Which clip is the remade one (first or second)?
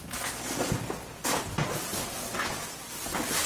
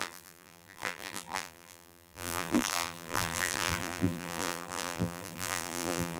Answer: second